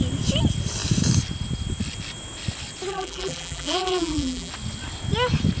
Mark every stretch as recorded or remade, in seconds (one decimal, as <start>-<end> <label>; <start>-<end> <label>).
0.0-2.9 recorded; 2.9-4.5 remade; 4.5-5.6 recorded

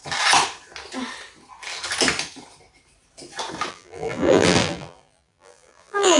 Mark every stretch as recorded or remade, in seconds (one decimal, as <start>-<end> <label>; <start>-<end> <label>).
0.0-3.7 recorded; 3.7-6.2 remade

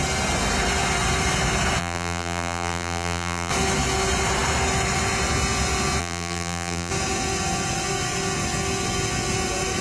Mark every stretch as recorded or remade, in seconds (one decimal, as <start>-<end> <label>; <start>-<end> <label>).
0.0-1.8 recorded; 1.8-3.5 remade; 3.5-6.0 recorded; 6.0-6.9 remade; 6.9-9.8 recorded

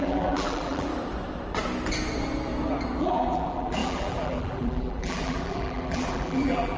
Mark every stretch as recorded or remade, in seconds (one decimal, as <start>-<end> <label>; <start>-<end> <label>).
0.0-0.9 remade; 0.9-3.0 recorded; 3.0-6.8 remade

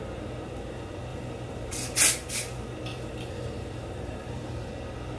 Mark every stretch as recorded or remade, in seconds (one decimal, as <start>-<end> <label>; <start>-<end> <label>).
0.0-1.1 recorded; 1.1-2.3 remade; 2.3-2.9 recorded; 2.9-4.7 remade; 4.7-5.2 recorded

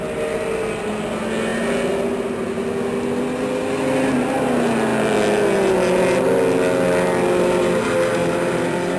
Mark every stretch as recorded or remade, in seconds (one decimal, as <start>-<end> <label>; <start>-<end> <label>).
0.0-8.2 recorded; 8.2-9.0 remade